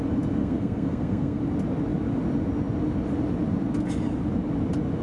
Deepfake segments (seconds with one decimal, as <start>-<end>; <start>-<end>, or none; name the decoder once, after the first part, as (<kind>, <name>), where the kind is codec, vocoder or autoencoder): 0.4-1.4 (codec, SNAC)